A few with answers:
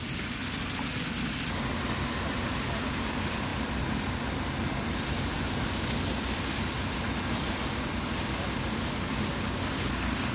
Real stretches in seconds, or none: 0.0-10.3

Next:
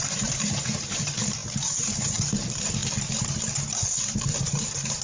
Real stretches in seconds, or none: 2.8-4.0

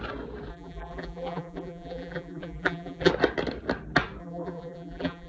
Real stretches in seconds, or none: 0.0-0.5; 3.1-4.2